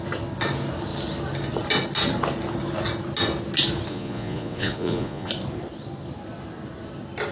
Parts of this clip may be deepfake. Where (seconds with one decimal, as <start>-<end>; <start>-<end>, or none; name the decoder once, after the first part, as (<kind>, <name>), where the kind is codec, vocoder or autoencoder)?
3.9-5.3 (vocoder, Vocos)